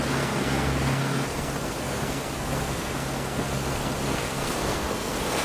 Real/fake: fake